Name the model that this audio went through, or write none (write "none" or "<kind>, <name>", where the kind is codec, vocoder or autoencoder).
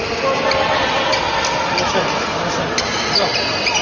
none